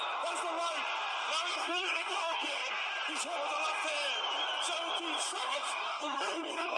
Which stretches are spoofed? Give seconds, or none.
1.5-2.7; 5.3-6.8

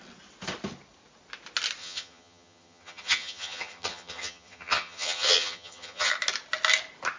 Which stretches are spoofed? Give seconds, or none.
1.8-6.1

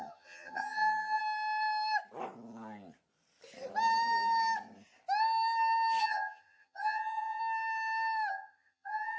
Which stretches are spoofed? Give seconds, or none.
0.0-1.2; 6.0-7.4; 8.3-9.2

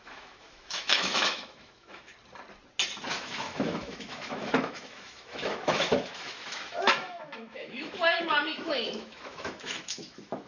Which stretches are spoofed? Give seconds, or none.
0.0-2.1; 3.1-10.5

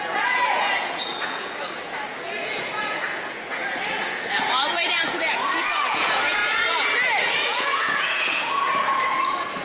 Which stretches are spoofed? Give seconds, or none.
0.0-9.6